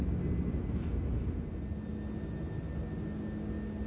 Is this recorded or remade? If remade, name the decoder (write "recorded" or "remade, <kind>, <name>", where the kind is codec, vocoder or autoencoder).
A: recorded